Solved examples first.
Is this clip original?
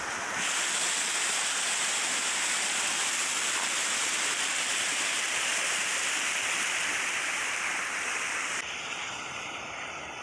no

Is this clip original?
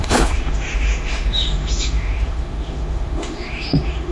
no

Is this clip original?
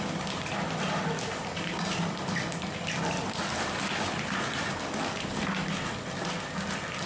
yes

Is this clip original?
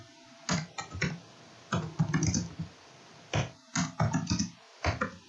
yes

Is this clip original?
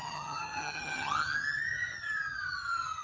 no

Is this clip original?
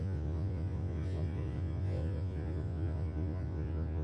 no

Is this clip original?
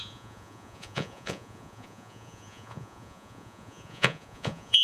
no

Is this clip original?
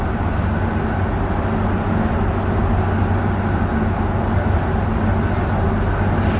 yes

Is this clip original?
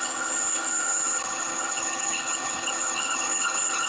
no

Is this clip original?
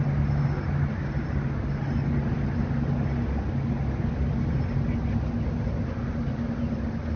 yes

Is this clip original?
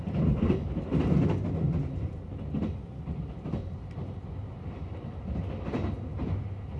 yes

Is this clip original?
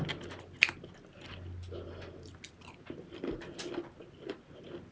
yes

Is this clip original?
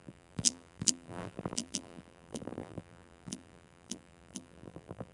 no